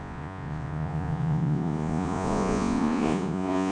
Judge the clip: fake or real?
fake